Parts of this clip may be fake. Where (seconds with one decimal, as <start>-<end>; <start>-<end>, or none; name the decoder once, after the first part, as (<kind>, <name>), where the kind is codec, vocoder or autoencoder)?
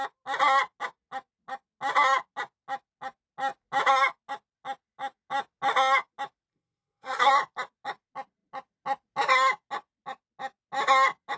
6.5-7.3 (codec, SNAC)